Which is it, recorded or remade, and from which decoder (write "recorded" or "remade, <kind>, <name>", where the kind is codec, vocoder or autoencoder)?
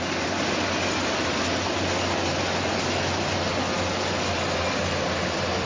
recorded